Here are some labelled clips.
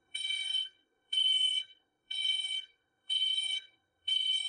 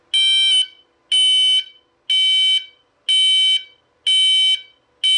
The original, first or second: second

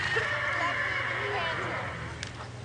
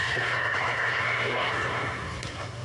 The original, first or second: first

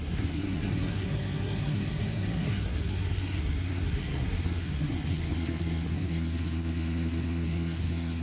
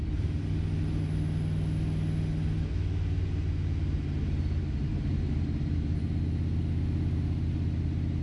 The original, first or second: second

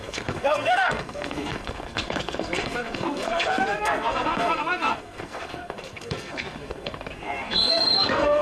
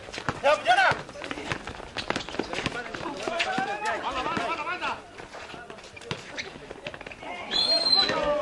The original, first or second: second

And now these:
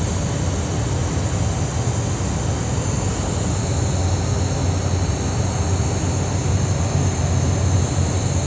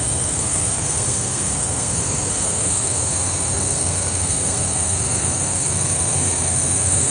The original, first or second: first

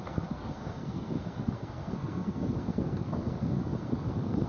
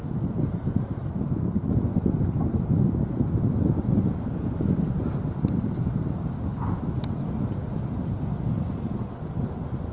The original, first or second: second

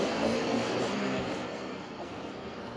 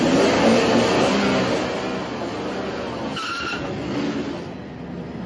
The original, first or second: second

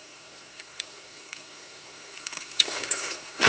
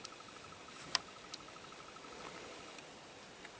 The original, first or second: second